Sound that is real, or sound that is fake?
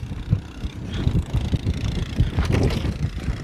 real